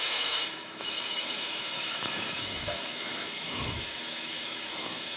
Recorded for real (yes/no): no